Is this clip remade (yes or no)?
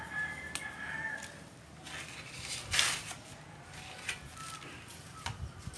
no